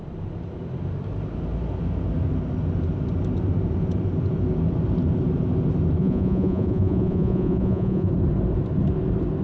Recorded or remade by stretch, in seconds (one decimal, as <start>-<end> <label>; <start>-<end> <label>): 0.0-6.0 recorded; 6.0-8.1 remade; 8.1-9.4 recorded